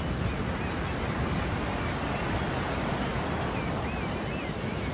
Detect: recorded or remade recorded